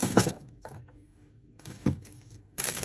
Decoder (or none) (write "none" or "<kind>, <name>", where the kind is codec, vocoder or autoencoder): codec, DAC